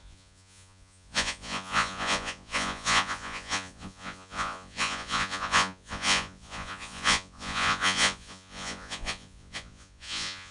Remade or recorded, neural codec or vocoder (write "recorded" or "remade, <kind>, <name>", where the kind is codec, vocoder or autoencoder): remade, vocoder, Vocos